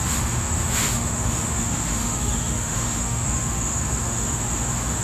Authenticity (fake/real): fake